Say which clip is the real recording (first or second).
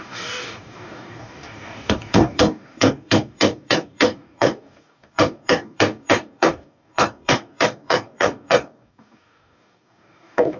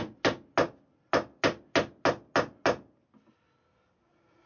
second